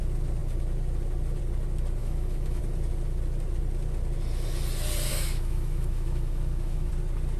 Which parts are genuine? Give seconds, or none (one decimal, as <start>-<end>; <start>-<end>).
0.0-2.0; 2.6-5.1; 6.9-7.4